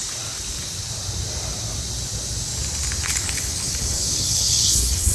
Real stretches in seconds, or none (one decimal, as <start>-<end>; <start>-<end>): 0.0-3.1